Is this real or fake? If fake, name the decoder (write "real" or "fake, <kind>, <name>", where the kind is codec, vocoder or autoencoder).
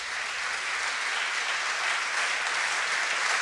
real